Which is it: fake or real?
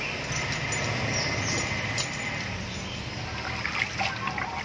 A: real